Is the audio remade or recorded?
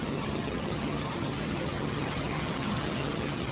remade